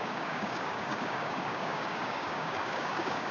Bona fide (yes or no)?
no